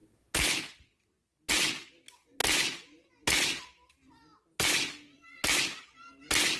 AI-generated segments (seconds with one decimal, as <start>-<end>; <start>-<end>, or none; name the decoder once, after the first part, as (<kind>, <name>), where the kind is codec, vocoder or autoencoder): none